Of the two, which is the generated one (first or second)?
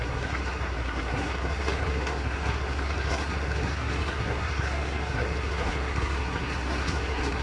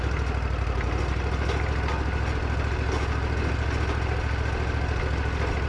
first